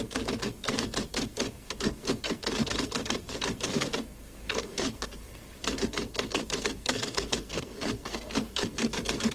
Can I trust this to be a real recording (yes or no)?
no